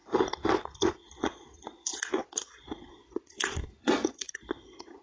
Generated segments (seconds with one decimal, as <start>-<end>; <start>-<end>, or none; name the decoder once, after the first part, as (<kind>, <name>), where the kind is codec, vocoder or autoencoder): 0.9-5.0 (vocoder, Vocos)